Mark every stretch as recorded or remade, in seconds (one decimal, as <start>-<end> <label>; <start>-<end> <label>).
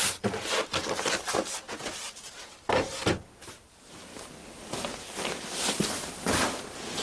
0.0-7.0 recorded